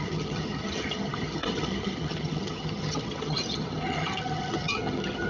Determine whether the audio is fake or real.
fake